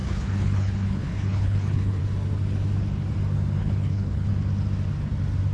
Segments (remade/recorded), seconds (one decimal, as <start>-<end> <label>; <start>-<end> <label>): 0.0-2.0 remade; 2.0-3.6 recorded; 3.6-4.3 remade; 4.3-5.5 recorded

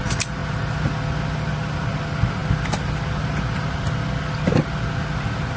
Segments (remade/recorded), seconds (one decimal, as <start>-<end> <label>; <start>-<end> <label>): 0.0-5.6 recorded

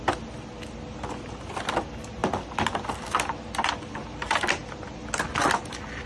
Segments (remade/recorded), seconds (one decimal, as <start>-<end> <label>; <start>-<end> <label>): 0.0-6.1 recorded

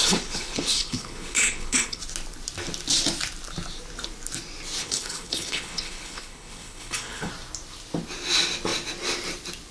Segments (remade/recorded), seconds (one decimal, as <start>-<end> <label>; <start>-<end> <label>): 0.0-2.0 remade; 2.0-4.8 recorded; 4.8-7.3 remade; 7.3-9.7 recorded

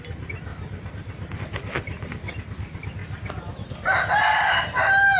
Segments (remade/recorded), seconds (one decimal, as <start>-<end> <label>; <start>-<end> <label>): 0.0-5.2 recorded

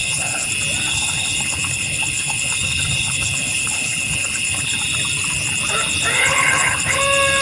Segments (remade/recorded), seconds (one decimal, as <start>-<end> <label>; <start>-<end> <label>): 0.0-0.5 remade; 0.5-0.9 recorded; 0.9-4.8 remade; 4.8-6.1 recorded; 6.1-7.0 remade; 7.0-7.4 recorded